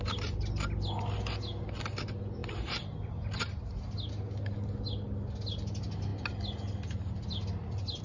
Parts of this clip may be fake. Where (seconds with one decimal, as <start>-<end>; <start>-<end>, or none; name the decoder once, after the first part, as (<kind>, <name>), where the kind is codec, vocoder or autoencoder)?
none